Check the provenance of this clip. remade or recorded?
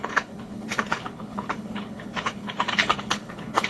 remade